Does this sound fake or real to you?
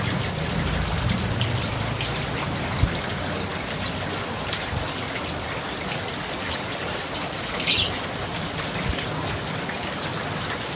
real